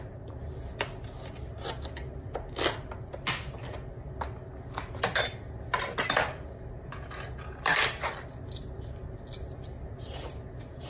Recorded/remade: recorded